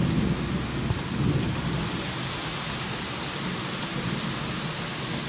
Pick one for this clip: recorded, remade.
recorded